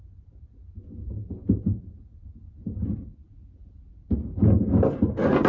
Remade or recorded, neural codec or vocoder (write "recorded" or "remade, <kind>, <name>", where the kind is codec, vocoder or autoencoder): recorded